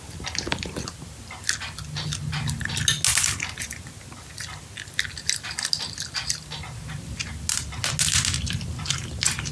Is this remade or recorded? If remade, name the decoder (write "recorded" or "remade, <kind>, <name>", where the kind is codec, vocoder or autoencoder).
recorded